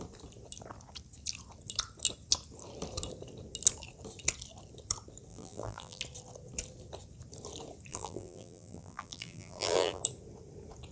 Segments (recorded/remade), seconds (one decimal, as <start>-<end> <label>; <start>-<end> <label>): 0.0-5.3 recorded; 5.3-6.0 remade; 6.0-7.9 recorded; 7.9-10.0 remade; 10.0-10.9 recorded